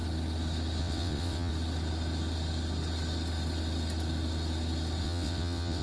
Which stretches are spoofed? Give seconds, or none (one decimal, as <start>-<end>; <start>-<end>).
0.8-1.5; 5.0-5.8